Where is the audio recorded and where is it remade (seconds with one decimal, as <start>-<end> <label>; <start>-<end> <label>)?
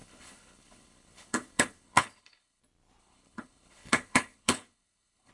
0.0-2.6 remade; 2.6-3.0 recorded; 3.0-5.3 remade